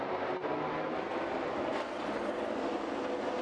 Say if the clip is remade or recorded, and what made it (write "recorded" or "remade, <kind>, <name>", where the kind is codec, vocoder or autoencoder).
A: recorded